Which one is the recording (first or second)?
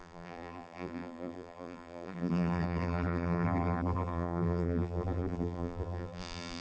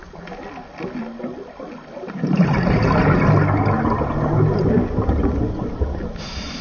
second